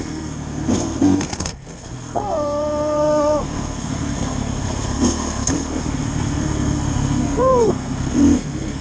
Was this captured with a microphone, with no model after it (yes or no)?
no